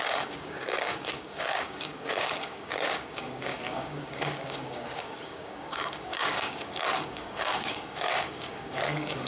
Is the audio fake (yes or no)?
yes